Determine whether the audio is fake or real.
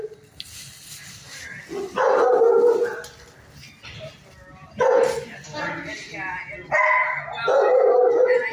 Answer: real